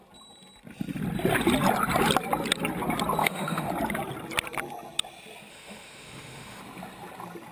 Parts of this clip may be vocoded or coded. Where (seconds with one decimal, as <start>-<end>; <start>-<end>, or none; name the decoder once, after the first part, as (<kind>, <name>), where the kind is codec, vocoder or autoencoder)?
3.2-3.7 (autoencoder, DAC-VAE); 5.5-6.6